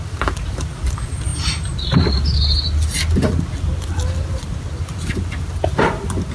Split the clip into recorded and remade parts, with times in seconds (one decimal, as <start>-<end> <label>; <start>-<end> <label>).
0.0-6.3 recorded